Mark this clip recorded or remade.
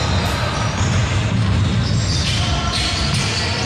recorded